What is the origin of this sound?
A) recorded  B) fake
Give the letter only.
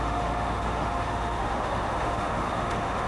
B